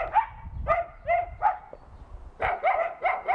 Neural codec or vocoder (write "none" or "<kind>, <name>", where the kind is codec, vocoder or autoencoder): none